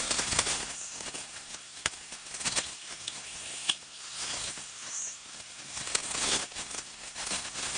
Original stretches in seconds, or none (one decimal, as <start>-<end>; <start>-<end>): none